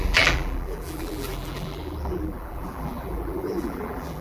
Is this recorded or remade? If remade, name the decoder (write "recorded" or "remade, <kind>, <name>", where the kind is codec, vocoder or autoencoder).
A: remade, vocoder, BigVGAN v2